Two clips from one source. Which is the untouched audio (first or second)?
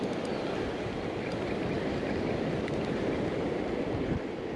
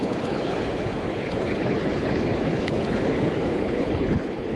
first